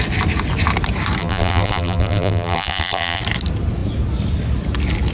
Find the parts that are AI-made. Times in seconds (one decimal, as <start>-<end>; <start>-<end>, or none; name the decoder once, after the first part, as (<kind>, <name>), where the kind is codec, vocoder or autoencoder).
1.2-3.2 (vocoder, BigVGAN v2)